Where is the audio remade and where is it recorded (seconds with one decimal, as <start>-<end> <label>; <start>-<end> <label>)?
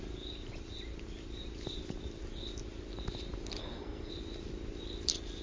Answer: 0.0-3.6 recorded; 3.6-4.1 remade; 4.1-5.4 recorded